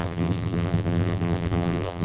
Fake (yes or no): yes